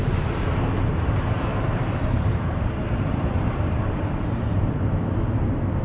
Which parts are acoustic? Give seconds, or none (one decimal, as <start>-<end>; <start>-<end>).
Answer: 0.6-1.5; 5.0-5.8